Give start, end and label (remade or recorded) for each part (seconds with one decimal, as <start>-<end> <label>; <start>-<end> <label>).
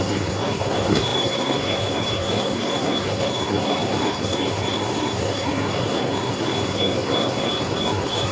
0.0-8.3 remade